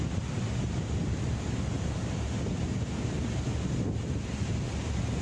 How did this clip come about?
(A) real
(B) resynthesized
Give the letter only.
A